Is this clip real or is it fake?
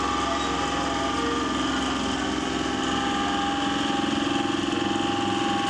real